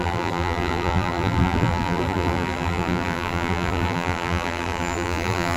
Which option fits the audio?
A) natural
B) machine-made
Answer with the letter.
B